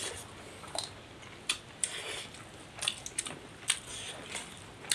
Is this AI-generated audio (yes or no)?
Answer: no